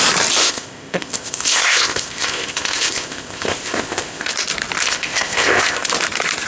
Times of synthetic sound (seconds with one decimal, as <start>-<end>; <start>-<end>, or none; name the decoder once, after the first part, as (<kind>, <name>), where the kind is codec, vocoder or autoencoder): 0.4-4.3 (codec, ZipCodec); 4.8-5.9